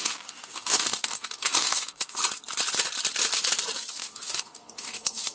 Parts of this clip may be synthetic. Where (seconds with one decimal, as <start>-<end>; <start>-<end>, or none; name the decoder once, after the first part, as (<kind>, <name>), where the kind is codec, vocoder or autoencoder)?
0.0-2.2 (codec, DAC); 3.9-5.3